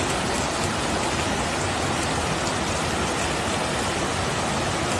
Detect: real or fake real